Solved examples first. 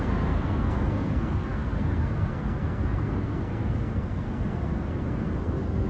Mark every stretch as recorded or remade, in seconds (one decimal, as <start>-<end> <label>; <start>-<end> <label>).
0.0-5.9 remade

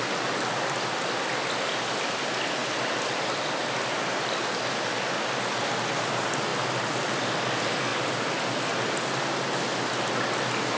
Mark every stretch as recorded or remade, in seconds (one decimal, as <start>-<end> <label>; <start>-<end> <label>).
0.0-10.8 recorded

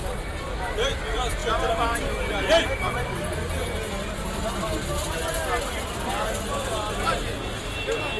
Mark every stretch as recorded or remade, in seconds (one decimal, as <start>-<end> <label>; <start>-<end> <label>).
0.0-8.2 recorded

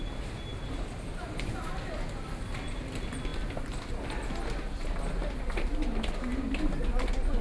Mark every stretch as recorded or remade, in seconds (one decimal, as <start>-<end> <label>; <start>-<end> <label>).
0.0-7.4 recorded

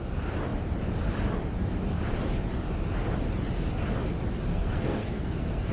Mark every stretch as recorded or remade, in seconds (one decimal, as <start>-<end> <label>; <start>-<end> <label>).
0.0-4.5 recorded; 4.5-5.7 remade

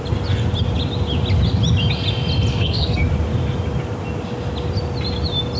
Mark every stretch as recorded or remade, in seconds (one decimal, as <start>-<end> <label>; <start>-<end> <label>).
0.0-2.5 recorded; 2.5-3.0 remade; 3.0-5.6 recorded